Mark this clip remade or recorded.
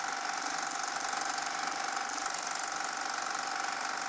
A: recorded